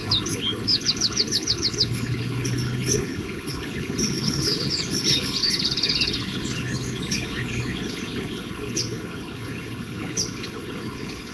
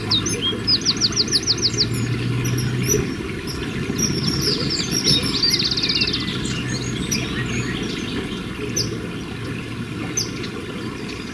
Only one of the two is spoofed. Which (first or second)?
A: first